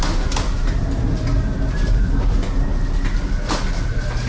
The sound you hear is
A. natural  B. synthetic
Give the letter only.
A